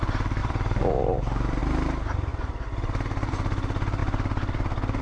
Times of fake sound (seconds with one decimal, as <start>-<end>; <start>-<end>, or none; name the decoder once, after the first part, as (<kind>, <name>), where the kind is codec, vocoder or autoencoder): 0.4-1.6 (vocoder, BigVGAN v2); 4.0-5.0